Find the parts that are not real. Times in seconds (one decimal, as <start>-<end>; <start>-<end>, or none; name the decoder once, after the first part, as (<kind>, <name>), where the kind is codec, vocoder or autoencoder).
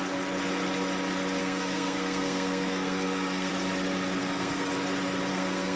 1.4-3.5 (codec, SNAC); 4.2-4.7; 5.3-5.8